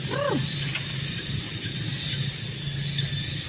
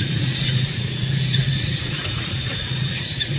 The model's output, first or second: second